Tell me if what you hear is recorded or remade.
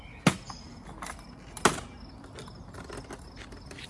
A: recorded